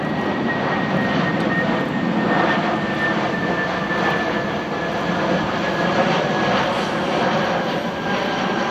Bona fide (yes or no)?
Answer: yes